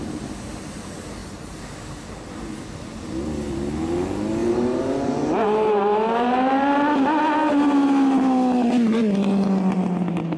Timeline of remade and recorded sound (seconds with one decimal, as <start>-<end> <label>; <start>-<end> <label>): 0.0-4.4 recorded; 4.4-7.2 remade; 7.2-10.4 recorded